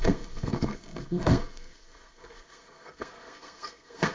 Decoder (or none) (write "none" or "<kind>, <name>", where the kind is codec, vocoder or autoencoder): codec, SNAC